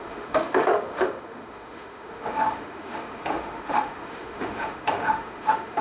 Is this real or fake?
fake